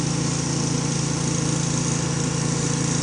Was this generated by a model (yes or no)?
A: no